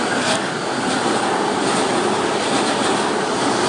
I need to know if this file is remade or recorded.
recorded